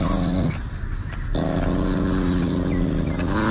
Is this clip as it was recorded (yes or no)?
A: yes